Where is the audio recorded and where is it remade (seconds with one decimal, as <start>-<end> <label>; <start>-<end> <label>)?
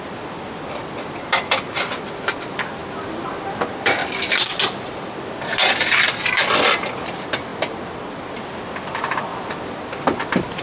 0.0-2.8 remade; 2.8-3.6 recorded; 3.6-4.0 remade; 4.0-5.1 recorded; 5.1-7.5 remade; 7.5-8.3 recorded; 8.3-9.3 remade; 9.3-10.2 recorded; 10.2-10.6 remade